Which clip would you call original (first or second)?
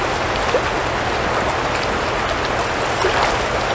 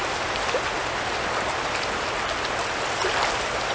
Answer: first